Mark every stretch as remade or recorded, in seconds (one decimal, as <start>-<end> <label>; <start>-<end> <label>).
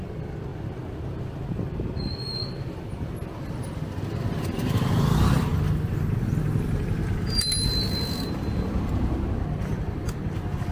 0.0-10.7 recorded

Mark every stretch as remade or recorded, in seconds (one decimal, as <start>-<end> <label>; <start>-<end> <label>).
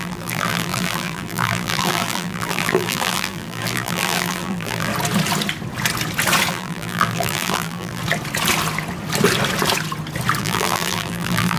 0.0-4.9 remade; 4.9-6.5 recorded; 6.5-8.0 remade; 8.0-10.4 recorded; 10.4-11.6 remade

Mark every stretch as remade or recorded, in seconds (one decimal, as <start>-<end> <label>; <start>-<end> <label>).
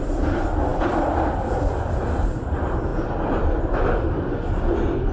0.0-2.9 remade; 2.9-3.6 recorded; 3.6-5.1 remade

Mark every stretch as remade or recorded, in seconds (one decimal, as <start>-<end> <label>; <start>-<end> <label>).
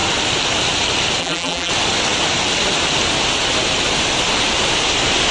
0.0-1.2 recorded; 1.2-1.7 remade; 1.7-5.3 recorded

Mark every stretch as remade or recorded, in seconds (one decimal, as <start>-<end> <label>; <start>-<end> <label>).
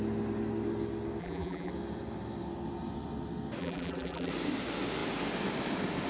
0.0-1.2 recorded; 1.2-1.7 remade; 1.7-3.6 recorded; 3.6-4.3 remade; 4.3-6.1 recorded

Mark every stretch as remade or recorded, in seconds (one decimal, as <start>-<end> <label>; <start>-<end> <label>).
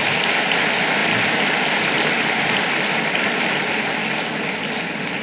0.0-1.0 recorded; 1.0-4.1 remade; 4.1-5.2 recorded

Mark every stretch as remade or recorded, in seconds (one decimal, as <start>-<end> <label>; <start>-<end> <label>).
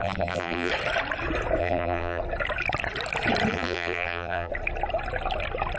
0.0-0.7 remade; 0.7-1.6 recorded; 1.6-2.2 remade; 2.2-3.5 recorded; 3.5-4.5 remade; 4.5-5.8 recorded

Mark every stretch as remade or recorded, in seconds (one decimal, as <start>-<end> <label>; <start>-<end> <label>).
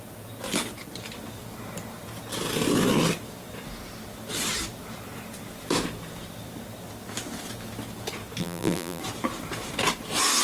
0.0-8.4 recorded; 8.4-9.0 remade; 9.0-10.4 recorded